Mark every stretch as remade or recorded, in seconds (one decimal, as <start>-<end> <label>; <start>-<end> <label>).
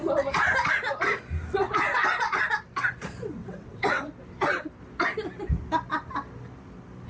0.0-3.4 recorded; 3.4-4.0 remade; 4.0-7.1 recorded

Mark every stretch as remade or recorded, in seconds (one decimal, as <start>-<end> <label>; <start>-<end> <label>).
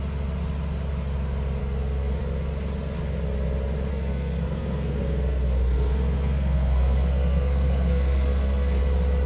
0.0-1.6 recorded; 1.6-2.2 remade; 2.2-3.9 recorded; 3.9-8.8 remade; 8.8-9.3 recorded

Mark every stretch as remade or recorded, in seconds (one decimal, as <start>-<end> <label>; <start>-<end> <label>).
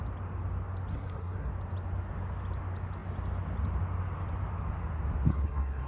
0.0-0.9 recorded; 0.9-1.5 remade; 1.5-5.3 recorded; 5.3-5.9 remade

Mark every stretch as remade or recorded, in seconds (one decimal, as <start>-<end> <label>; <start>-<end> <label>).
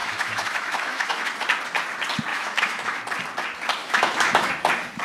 0.0-1.3 remade; 1.3-2.3 recorded; 2.3-3.0 remade; 3.0-3.8 recorded; 3.8-4.5 remade; 4.5-5.0 recorded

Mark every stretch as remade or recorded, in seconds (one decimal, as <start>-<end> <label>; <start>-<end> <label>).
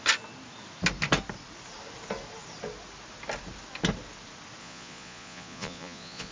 0.0-4.6 recorded; 4.6-6.3 remade